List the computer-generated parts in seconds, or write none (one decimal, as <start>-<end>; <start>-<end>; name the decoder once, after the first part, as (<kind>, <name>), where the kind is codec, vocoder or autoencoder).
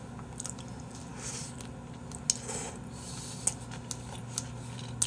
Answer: none